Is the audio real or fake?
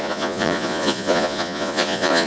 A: fake